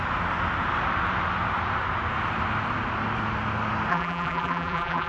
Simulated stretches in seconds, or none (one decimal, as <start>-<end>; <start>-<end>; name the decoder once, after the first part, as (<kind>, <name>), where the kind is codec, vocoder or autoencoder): 3.9-5.1 (vocoder, BigVGAN v2)